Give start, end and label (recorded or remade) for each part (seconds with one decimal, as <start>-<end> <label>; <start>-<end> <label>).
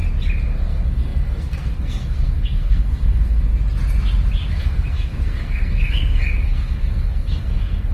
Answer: 0.0-0.7 recorded; 0.7-3.5 remade; 3.5-4.5 recorded; 4.5-7.9 remade